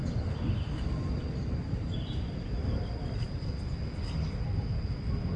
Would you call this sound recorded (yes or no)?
yes